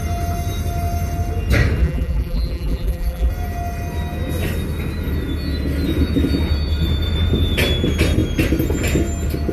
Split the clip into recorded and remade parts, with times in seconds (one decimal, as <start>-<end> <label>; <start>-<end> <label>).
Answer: 0.0-1.8 recorded; 1.8-3.3 remade; 3.3-9.5 recorded